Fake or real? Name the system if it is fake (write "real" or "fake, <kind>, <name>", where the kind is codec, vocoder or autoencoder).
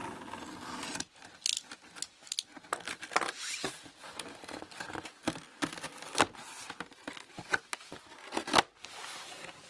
real